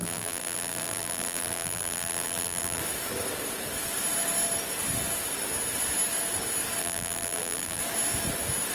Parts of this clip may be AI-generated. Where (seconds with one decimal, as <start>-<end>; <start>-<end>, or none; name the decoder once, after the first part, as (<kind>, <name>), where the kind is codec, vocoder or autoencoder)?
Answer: 0.0-2.8 (vocoder, BigVGAN v2); 6.8-7.8